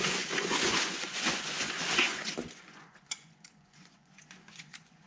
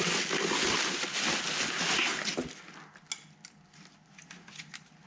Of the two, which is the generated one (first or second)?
first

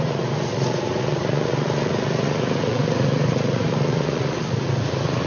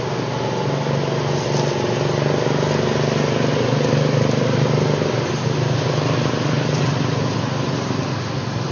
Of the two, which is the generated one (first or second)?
first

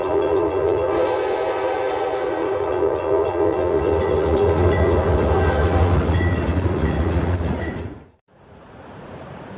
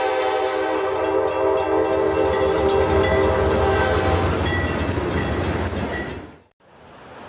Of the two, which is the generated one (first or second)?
first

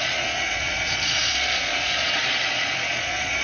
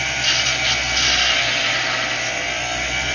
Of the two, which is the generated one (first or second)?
first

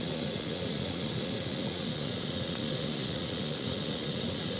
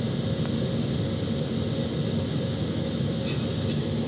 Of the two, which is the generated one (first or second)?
first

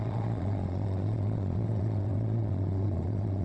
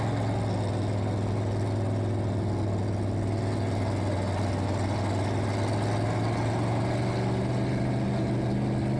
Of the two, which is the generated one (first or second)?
first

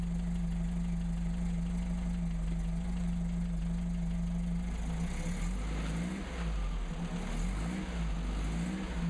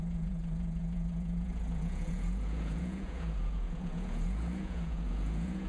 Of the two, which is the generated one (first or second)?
second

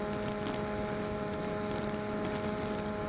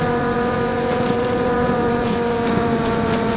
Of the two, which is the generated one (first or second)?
second